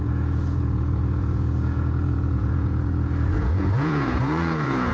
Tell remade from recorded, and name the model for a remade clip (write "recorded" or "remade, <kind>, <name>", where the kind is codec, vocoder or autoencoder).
remade, vocoder, Vocos